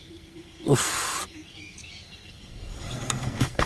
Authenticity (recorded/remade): remade